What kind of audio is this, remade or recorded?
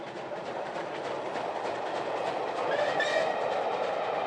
recorded